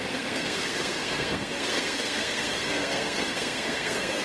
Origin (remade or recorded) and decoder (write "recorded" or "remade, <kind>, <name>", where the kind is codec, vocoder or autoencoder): remade, codec, SNAC